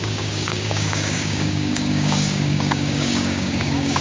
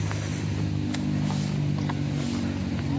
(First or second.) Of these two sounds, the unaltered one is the second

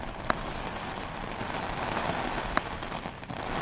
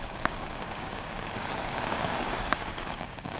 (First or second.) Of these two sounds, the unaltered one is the first